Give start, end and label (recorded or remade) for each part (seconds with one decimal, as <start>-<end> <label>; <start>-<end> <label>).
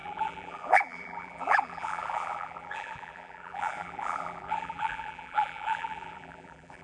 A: 0.0-6.8 remade